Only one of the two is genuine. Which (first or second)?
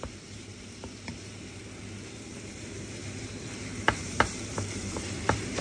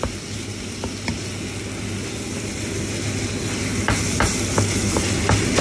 second